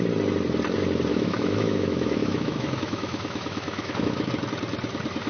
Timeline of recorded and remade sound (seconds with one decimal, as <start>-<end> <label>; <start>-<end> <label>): 0.0-1.1 recorded; 1.1-4.3 remade; 4.3-5.3 recorded